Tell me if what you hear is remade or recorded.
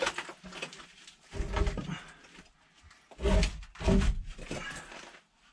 recorded